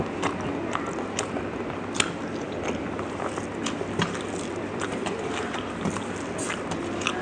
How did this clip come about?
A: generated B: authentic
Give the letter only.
B